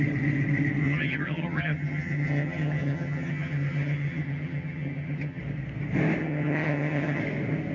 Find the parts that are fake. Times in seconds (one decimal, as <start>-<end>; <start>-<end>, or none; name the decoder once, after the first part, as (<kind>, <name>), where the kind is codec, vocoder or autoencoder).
0.8-5.4 (vocoder, HiFi-GAN); 6.2-7.2